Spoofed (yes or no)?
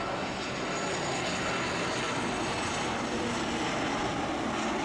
no